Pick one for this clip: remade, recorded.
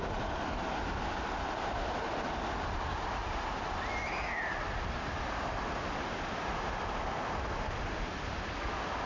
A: recorded